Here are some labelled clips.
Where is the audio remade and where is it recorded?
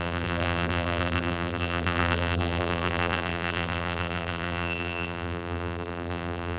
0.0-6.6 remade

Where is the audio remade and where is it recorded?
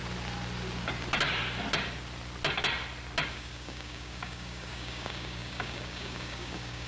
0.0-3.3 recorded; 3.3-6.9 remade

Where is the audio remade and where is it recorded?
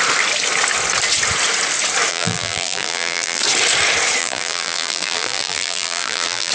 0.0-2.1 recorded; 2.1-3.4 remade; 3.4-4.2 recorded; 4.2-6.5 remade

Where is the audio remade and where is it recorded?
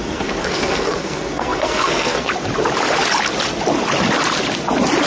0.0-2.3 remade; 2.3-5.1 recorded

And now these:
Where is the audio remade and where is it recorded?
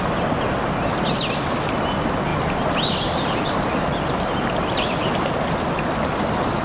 0.0-2.3 recorded; 2.3-3.9 remade; 3.9-6.6 recorded